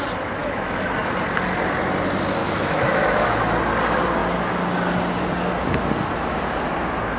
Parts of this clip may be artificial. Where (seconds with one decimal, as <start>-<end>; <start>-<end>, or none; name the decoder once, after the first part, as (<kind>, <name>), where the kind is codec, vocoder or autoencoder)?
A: 0.4-0.9 (autoencoder, DAC-VAE); 2.4-3.4